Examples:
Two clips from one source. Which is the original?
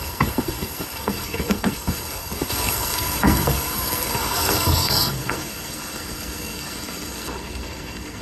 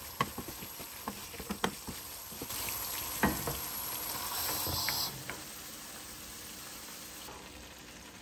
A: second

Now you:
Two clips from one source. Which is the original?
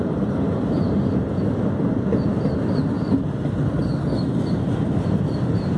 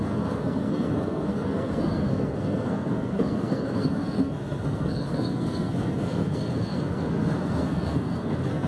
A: first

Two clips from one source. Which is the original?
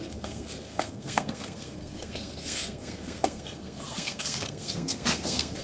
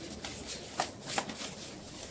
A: second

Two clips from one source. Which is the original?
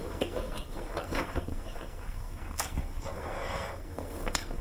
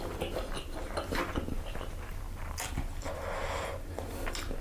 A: second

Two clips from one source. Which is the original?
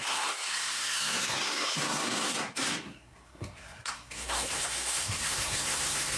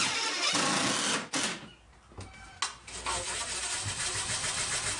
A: second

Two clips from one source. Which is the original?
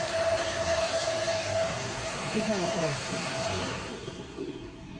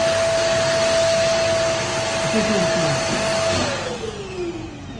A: second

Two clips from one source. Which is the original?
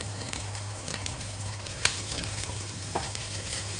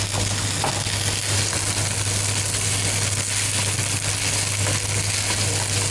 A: second